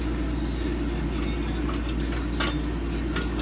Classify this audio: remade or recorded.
recorded